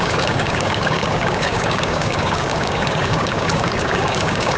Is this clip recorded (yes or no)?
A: no